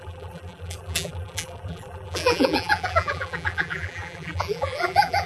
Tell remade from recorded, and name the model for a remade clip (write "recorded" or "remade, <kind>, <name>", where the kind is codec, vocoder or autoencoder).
remade, vocoder, BigVGAN v2